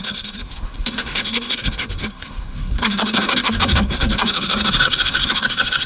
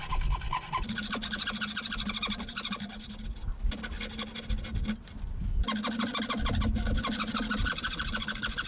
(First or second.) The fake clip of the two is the first